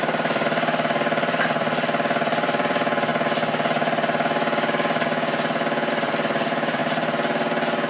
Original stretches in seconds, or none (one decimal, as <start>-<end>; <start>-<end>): 3.1-5.9; 6.8-7.9